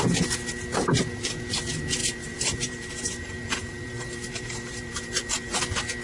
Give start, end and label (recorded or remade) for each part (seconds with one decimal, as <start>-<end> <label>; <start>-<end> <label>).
0.0-2.0 recorded; 2.0-5.6 remade; 5.6-6.0 recorded